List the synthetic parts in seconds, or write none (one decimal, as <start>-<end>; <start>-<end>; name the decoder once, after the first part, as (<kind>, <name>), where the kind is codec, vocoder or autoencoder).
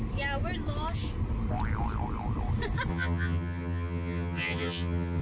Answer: 2.9-5.2 (vocoder, HiFi-GAN)